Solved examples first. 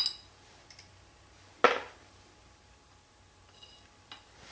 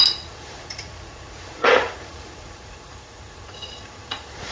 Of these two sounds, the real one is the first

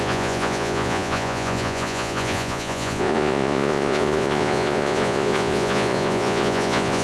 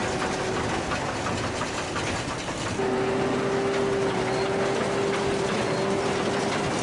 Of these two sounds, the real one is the second